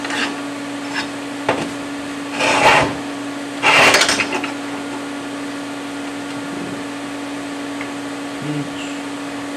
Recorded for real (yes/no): yes